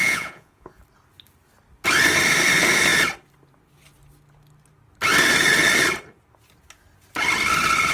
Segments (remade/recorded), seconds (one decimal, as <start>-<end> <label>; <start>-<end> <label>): 0.0-0.8 remade; 0.8-7.9 recorded